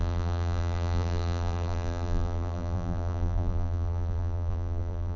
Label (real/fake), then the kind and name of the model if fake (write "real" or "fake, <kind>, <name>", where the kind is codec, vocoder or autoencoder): fake, vocoder, BigVGAN v2